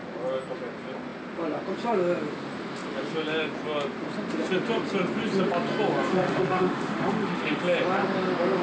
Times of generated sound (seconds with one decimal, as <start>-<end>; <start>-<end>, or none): 6.1-7.6